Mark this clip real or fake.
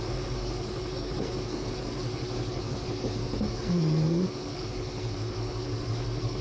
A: fake